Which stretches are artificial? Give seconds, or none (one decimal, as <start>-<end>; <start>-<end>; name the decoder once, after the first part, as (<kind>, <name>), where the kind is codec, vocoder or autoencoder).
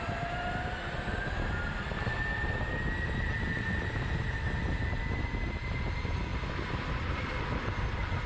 none